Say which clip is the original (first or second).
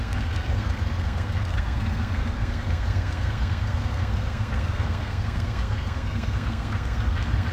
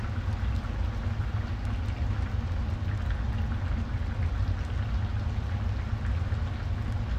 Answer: second